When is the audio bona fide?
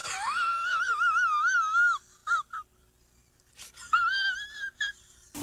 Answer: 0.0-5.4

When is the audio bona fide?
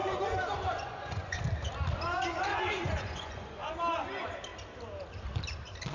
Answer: 1.4-2.5; 3.7-5.9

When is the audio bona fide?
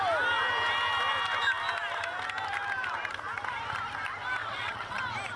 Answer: 0.0-4.4; 5.0-5.4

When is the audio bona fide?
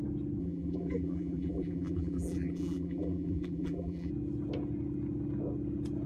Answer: 0.0-0.4; 4.1-6.1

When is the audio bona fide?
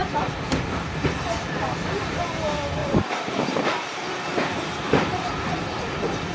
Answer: 1.1-2.8; 5.3-6.3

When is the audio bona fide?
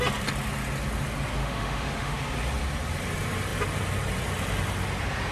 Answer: 0.0-1.4; 2.2-5.3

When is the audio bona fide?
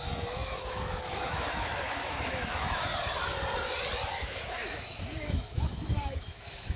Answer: 2.9-4.1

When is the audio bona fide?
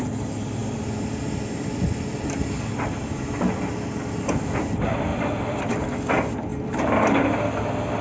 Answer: 0.0-0.6; 2.6-5.1; 5.7-8.0